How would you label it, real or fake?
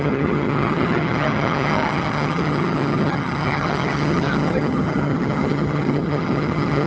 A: fake